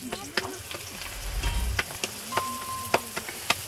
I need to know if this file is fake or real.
real